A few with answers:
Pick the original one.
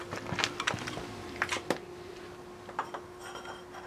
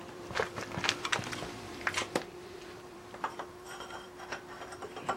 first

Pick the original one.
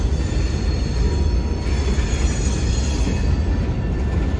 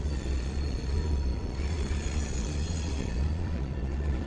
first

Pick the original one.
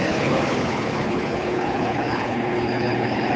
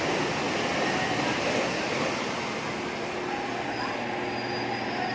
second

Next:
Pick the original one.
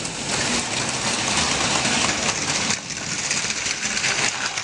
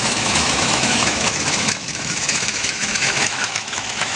first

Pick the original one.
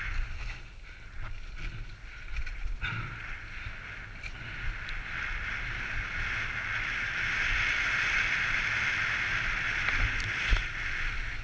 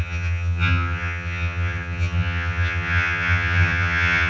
first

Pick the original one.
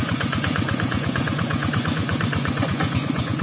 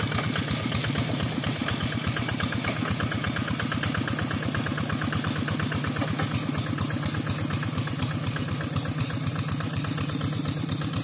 second